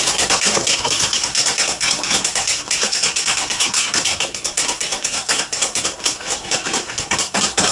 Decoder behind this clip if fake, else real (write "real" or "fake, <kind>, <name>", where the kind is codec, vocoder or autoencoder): fake, codec, SNAC